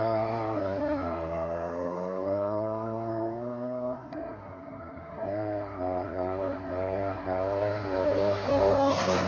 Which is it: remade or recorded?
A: remade